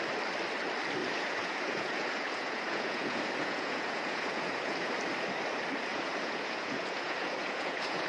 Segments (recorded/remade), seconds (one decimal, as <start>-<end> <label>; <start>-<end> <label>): 0.0-1.0 recorded; 1.0-4.9 remade; 4.9-5.9 recorded; 5.9-8.1 remade